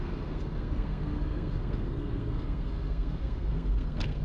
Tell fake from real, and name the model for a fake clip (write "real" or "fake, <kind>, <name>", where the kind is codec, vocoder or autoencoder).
fake, codec, SNAC